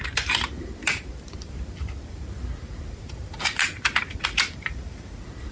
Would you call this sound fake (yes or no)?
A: yes